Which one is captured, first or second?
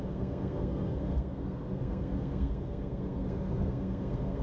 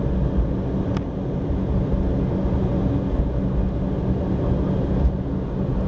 second